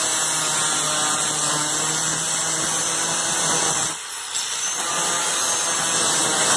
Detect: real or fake real